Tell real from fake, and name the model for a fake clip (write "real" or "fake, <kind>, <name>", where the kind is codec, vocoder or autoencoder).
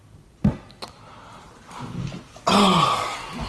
real